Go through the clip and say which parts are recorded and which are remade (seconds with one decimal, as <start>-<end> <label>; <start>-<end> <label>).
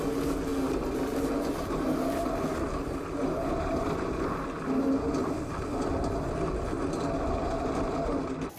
0.0-8.6 recorded